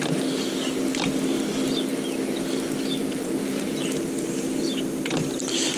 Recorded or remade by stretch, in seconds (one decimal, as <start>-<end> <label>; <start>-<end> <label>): 0.0-5.8 recorded

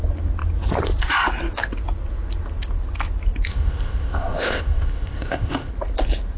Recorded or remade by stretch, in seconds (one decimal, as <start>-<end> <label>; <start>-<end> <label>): 0.0-3.5 recorded; 3.5-5.7 remade; 5.7-6.4 recorded